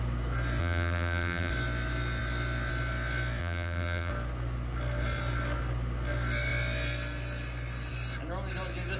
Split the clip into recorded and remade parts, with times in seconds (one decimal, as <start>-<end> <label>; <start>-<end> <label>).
0.0-0.6 recorded; 0.6-1.5 remade; 1.5-3.4 recorded; 3.4-4.1 remade; 4.1-9.0 recorded